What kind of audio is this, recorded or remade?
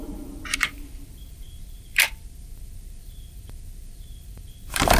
remade